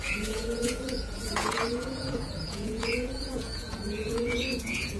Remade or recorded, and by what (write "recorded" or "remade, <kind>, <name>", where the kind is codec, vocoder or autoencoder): remade, vocoder, Vocos